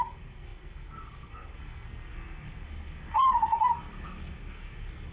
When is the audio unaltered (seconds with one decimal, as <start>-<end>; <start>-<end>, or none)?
none